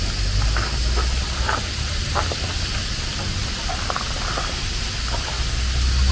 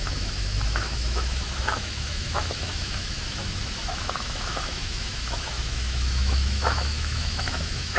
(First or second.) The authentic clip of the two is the first